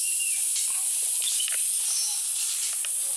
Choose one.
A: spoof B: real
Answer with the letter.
B